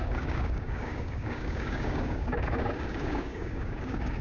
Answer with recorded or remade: remade